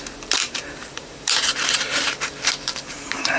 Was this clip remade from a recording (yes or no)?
yes